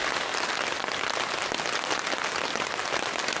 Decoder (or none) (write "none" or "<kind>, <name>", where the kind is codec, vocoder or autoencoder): none